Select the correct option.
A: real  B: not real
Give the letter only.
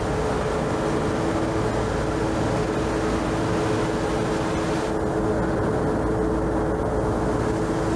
A